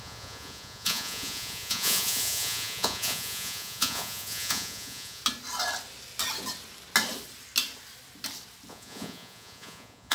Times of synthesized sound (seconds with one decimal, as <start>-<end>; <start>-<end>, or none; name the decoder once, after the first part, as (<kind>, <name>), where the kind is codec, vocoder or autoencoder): 0.0-5.2 (vocoder, Vocos); 8.7-10.1